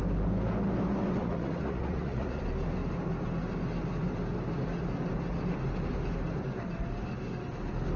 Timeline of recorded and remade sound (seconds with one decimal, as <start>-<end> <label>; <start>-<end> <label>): 0.0-1.2 recorded; 1.2-2.4 remade; 2.4-8.0 recorded